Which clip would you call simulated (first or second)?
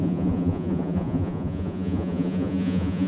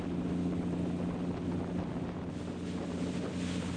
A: first